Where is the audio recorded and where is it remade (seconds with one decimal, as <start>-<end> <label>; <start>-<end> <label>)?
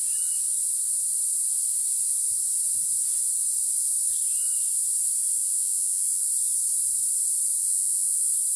0.0-5.4 recorded; 5.4-6.2 remade; 6.2-7.6 recorded; 7.6-8.2 remade; 8.2-8.6 recorded